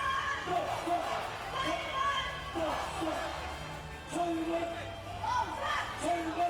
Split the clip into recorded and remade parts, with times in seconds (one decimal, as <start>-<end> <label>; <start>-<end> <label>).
0.0-6.5 recorded